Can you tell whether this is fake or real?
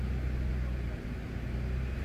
real